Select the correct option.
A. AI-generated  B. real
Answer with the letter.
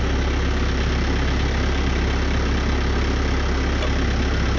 B